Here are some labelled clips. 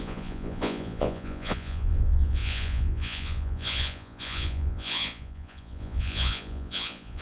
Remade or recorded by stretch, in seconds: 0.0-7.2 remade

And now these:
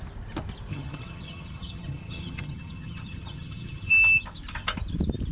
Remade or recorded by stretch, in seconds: 0.0-0.7 recorded; 0.7-3.9 remade; 3.9-5.3 recorded